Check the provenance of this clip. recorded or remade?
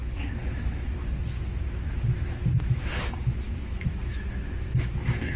remade